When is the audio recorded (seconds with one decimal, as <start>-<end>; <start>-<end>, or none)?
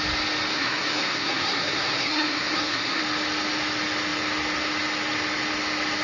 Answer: 0.0-0.5; 3.0-6.0